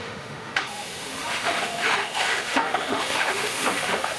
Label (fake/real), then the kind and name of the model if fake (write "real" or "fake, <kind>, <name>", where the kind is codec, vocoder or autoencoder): fake, autoencoder, DAC-VAE